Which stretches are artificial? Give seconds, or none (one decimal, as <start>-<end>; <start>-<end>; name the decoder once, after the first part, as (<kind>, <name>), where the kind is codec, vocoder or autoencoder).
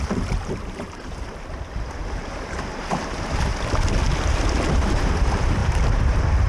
0.0-3.5 (vocoder, BigVGAN v2); 4.7-6.5